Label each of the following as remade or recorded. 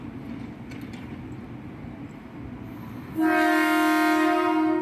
recorded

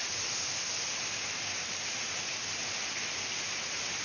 recorded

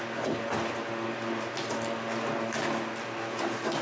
recorded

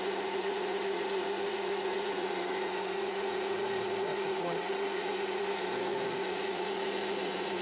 remade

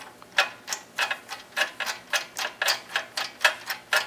recorded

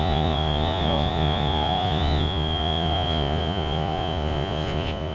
remade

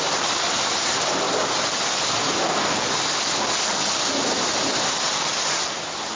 recorded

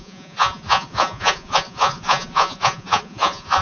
remade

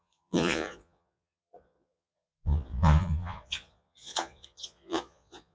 remade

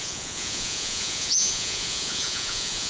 remade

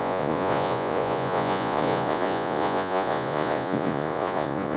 remade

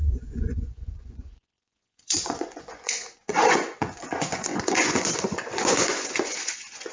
remade